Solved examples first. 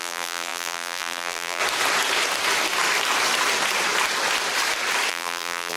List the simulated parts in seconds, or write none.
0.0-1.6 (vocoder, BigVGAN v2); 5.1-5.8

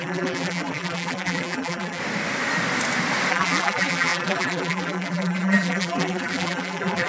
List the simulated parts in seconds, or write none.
0.0-2.0 (vocoder, BigVGAN v2); 3.3-7.1

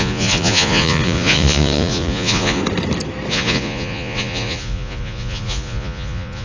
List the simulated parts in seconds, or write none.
0.0-2.6 (vocoder, Vocos); 3.3-6.4

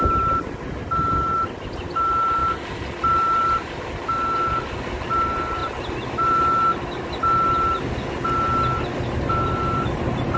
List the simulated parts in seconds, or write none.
none

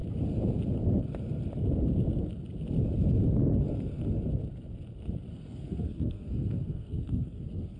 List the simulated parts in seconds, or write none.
5.3-7.8 (codec, SNAC)